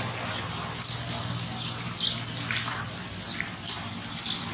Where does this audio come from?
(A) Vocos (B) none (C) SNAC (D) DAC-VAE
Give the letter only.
B